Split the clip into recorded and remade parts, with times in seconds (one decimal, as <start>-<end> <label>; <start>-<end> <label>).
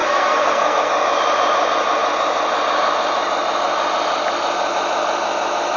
0.0-0.9 remade; 0.9-5.8 recorded